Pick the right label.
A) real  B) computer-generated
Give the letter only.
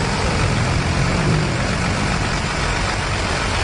A